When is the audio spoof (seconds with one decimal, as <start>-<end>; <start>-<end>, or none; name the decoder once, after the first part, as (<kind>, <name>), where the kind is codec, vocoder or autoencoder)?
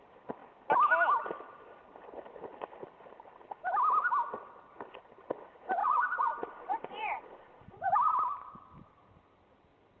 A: 5.8-8.1 (vocoder, Vocos)